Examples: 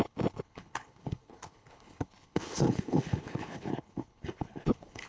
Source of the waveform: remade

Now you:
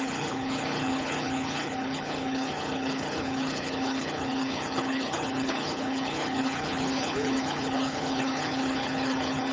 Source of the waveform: remade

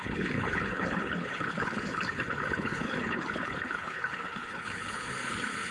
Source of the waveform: remade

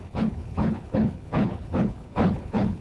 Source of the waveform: remade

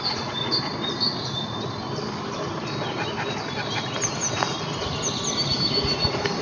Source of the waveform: recorded